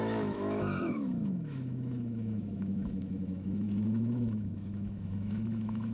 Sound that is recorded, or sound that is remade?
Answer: remade